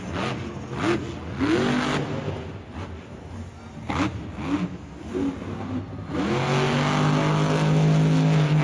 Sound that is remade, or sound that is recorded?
recorded